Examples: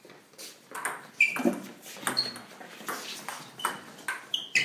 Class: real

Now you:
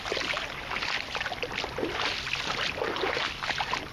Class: real